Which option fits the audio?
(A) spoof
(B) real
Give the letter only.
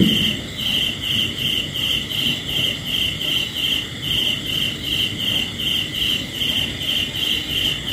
B